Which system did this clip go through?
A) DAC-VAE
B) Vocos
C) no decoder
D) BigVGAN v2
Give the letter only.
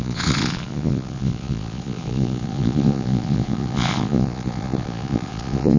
B